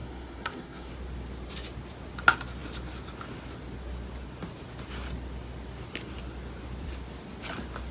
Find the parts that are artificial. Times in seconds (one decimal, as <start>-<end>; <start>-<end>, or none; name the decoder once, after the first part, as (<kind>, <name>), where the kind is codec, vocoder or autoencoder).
0.0-0.9 (codec, SNAC)